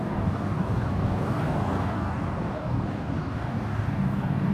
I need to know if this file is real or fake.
fake